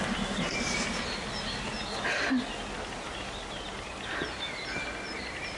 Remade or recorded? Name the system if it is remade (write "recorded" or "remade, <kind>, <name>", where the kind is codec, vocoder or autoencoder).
recorded